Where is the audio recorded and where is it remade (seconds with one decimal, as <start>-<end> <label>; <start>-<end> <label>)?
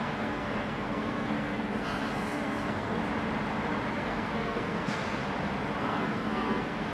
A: 0.0-3.0 remade; 3.0-3.9 recorded; 3.9-5.2 remade; 5.2-5.8 recorded; 5.8-6.9 remade